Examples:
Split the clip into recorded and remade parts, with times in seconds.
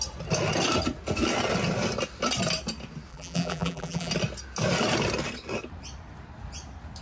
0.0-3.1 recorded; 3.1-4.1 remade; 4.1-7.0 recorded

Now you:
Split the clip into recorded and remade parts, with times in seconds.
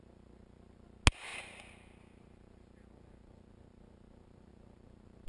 0.0-5.3 recorded